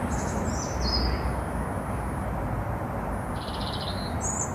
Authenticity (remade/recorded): recorded